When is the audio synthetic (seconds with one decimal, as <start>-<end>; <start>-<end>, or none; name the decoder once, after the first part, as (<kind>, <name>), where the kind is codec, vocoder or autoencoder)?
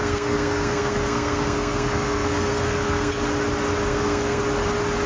0.0-3.1 (codec, SNAC); 3.9-4.4